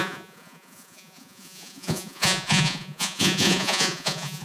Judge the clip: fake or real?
fake